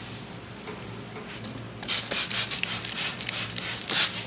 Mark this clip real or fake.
real